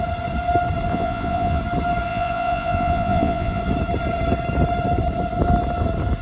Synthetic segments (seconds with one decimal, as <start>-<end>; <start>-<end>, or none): 0.9-1.6; 2.1-3.6